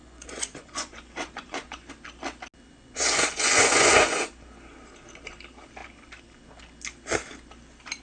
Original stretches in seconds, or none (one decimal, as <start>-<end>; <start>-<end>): 1.9-2.7; 4.3-8.0